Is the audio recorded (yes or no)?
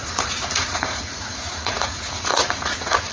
no